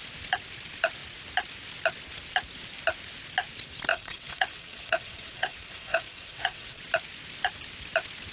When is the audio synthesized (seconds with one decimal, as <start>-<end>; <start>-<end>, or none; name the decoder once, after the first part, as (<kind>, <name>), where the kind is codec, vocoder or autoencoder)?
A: 3.9-6.8 (vocoder, WaveNeXt)